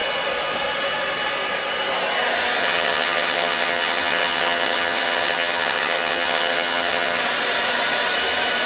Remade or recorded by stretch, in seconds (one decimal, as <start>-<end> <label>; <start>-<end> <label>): 0.0-2.6 recorded; 2.6-7.2 remade; 7.2-8.7 recorded